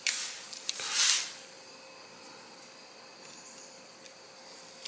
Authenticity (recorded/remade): recorded